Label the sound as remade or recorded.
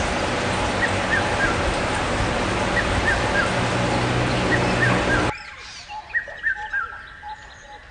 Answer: recorded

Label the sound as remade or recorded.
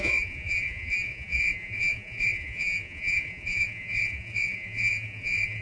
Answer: remade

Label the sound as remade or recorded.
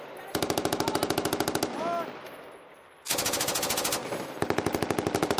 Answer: recorded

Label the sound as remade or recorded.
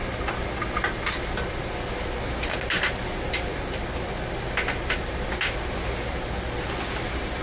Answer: recorded